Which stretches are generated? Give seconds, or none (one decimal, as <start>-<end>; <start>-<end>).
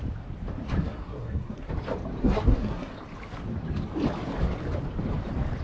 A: 0.8-1.7; 2.2-2.9